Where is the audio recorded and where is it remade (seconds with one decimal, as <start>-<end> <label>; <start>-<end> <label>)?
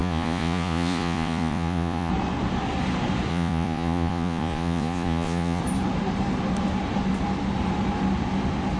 0.0-2.1 remade; 2.1-3.3 recorded; 3.3-5.6 remade; 5.6-8.8 recorded